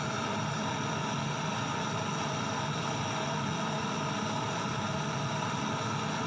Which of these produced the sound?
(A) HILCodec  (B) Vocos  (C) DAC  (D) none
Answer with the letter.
D